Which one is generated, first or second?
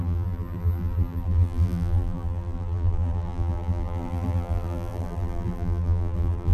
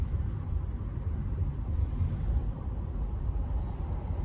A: first